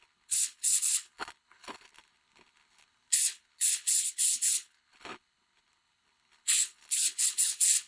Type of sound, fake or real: fake